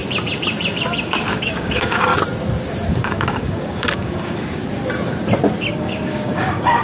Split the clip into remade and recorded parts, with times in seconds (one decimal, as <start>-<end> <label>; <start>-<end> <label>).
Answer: 0.0-1.0 recorded; 1.0-2.1 remade; 2.1-2.9 recorded; 2.9-4.6 remade; 4.6-5.7 recorded; 5.7-6.8 remade